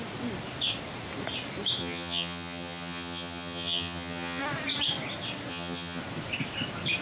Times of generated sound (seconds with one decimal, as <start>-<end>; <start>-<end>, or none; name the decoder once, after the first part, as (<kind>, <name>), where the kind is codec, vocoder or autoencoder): 1.8-4.4 (vocoder, HiFi-GAN); 5.5-6.0